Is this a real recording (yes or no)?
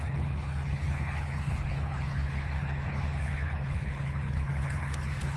no